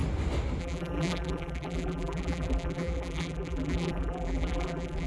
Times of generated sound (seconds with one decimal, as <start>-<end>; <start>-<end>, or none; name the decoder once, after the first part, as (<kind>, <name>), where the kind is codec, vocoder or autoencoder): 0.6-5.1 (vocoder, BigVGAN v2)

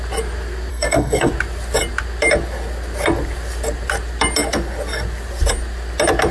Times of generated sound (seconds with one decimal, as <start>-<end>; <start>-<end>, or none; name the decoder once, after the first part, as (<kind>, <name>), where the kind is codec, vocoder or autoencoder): 0.7-1.3 (codec, SNAC)

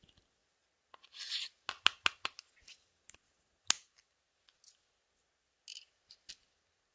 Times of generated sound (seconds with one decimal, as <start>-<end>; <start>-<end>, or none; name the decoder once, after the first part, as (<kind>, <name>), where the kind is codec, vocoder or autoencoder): 0.4-1.7 (vocoder, BigVGAN v2); 5.7-6.3

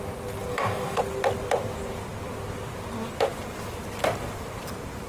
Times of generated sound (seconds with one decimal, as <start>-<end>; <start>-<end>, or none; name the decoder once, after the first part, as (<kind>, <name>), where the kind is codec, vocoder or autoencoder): 0.5-1.0 (codec, DAC)